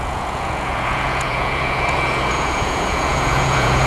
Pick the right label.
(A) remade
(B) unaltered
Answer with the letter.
A